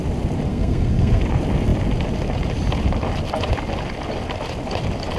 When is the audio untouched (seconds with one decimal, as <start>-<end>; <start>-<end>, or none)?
0.0-0.5; 1.2-5.2